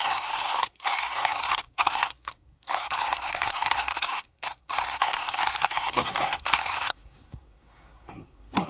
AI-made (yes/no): yes